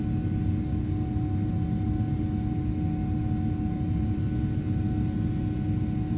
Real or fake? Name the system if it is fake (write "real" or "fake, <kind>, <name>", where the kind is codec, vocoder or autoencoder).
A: real